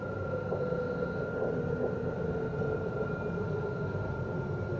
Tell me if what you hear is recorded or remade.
recorded